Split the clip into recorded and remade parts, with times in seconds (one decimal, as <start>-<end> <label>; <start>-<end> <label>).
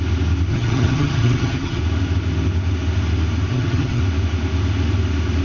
0.0-0.5 recorded; 0.5-1.8 remade; 1.8-3.5 recorded; 3.5-4.0 remade; 4.0-5.4 recorded